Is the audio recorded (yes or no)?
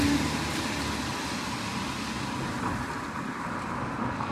yes